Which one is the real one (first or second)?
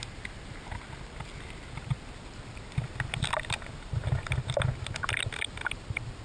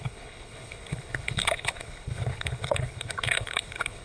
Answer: first